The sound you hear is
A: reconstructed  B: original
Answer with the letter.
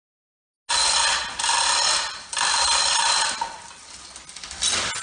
B